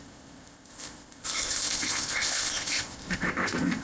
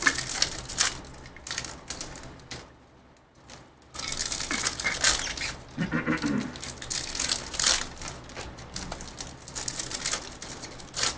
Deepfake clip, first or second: first